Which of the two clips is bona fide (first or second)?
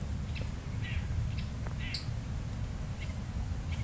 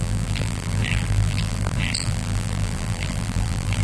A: first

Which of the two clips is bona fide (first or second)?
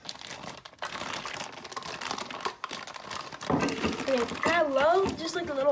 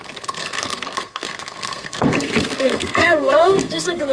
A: first